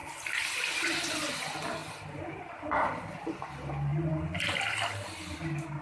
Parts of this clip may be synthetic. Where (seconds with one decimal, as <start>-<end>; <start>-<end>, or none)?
none